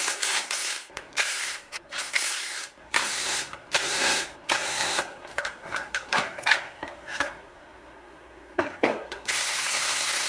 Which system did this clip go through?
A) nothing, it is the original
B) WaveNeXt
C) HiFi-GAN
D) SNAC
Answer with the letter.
D